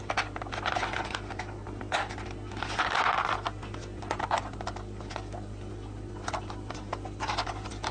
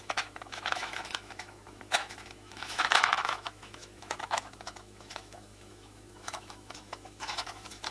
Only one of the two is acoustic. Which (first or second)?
first